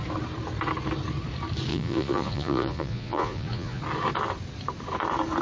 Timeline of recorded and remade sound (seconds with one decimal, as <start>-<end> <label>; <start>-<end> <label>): 0.0-1.7 recorded; 1.7-3.8 remade; 3.8-5.4 recorded